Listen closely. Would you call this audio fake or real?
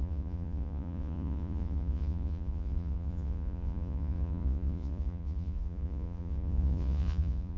fake